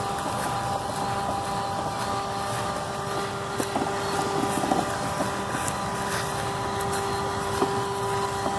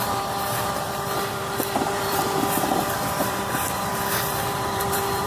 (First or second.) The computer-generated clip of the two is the second